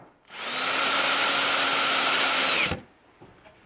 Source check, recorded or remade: recorded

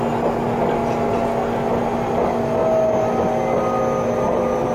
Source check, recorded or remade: recorded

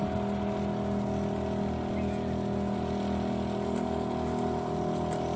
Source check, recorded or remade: recorded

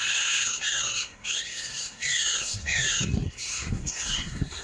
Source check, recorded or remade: remade